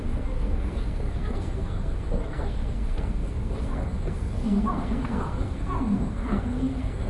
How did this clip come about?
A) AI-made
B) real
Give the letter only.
A